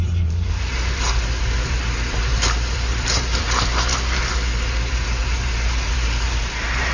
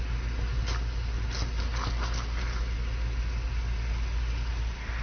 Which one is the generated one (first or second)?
first